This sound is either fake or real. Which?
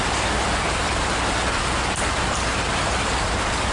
real